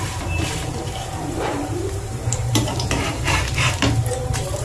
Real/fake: fake